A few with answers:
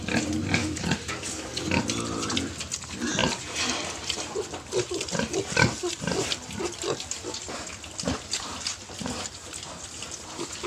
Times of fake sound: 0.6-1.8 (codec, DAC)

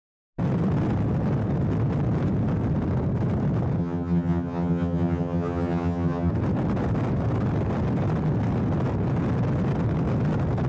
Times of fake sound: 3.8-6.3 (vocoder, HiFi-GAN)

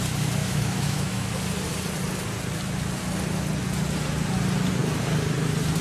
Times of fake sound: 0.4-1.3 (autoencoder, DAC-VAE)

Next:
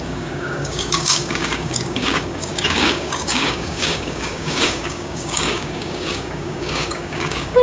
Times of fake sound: 0.0-7.6 (codec, DAC)

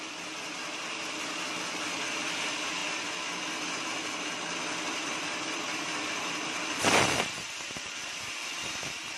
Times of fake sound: 0.0-2.8 (vocoder, BigVGAN v2); 3.8-9.2

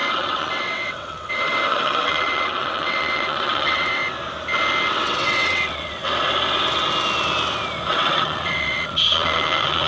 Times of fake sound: 0.0-4.0 (vocoder, WaveNeXt); 4.9-6.1; 7.9-9.9

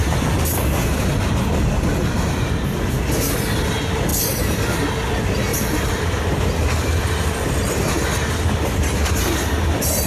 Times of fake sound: 0.0-0.9 (vocoder, BigVGAN v2); 4.1-4.8; 5.5-6.0

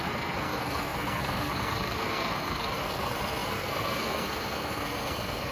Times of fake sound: 0.0-5.5 (codec, SNAC)